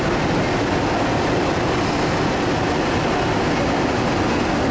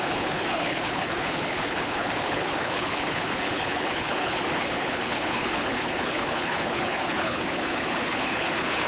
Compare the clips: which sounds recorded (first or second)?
first